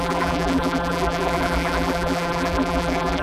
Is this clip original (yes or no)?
no